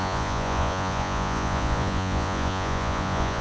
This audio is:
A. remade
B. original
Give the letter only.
A